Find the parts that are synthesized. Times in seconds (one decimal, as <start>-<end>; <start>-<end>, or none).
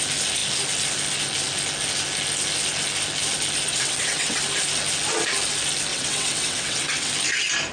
3.7-4.4; 5.9-7.1